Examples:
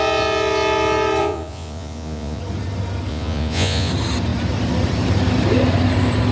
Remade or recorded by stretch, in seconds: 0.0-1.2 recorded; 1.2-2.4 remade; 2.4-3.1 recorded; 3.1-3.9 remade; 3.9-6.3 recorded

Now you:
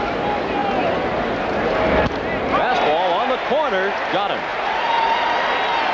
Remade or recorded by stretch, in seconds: 0.0-4.5 recorded; 4.5-5.5 remade; 5.5-5.9 recorded

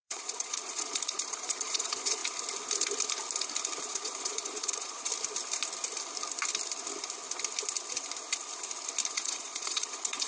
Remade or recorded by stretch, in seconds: 0.0-2.2 remade; 2.2-3.8 recorded; 3.8-5.1 remade; 5.1-9.1 recorded; 9.1-10.3 remade

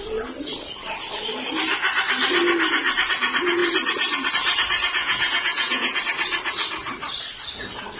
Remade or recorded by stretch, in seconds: 0.0-5.0 recorded; 5.0-6.0 remade; 6.0-8.0 recorded